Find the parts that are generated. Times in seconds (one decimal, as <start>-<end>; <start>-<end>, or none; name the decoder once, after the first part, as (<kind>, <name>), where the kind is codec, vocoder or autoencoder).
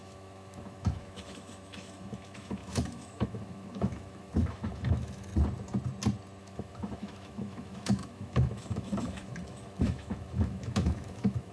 0.0-5.3 (autoencoder, DAC-VAE); 6.4-11.5